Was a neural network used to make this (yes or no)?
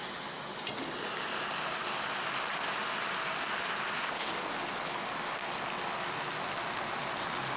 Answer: no